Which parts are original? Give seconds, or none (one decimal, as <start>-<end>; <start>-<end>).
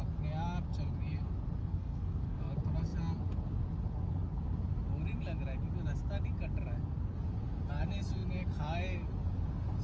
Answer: 0.0-1.6; 2.5-9.8